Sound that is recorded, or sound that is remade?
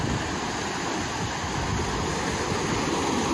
recorded